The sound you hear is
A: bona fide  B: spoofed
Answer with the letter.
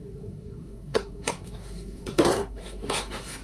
B